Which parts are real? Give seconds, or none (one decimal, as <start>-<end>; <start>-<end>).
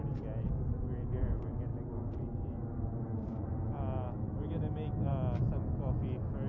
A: 0.0-6.5